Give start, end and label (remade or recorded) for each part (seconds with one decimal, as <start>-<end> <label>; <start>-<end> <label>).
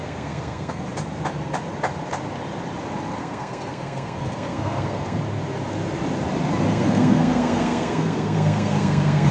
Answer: 0.0-0.8 remade; 0.8-3.2 recorded; 3.2-5.2 remade; 5.2-6.7 recorded; 6.7-9.3 remade